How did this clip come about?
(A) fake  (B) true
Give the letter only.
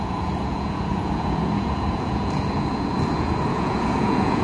A